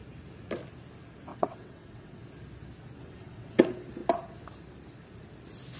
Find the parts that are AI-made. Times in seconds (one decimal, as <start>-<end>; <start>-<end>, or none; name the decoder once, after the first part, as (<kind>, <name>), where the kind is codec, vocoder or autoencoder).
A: 1.3-2.2 (vocoder, WaveNeXt); 3.0-3.6